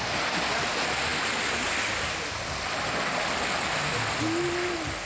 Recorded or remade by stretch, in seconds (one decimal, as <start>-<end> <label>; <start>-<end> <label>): 0.0-5.1 recorded